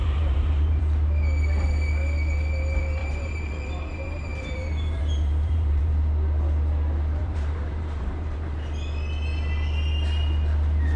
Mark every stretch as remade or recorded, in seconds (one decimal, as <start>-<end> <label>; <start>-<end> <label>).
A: 0.0-0.8 remade; 0.8-3.0 recorded; 3.0-5.9 remade; 5.9-7.2 recorded; 7.2-8.5 remade; 8.5-11.0 recorded